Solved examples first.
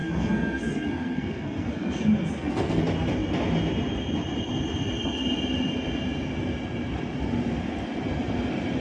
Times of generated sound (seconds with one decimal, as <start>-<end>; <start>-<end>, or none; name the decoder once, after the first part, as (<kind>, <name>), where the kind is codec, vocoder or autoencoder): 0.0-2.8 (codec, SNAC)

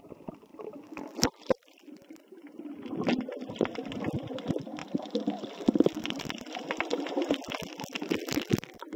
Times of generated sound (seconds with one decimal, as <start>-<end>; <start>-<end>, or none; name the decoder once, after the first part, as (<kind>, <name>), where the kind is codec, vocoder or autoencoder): 0.5-2.3 (vocoder, BigVGAN v2); 4.8-7.1

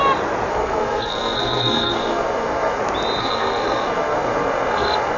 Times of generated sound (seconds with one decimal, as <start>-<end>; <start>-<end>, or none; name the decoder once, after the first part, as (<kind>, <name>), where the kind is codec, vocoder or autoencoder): 0.5-2.8 (codec, SNAC); 3.2-5.2